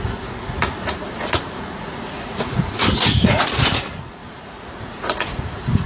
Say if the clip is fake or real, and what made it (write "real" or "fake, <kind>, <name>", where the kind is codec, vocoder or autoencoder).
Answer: fake, vocoder, Vocos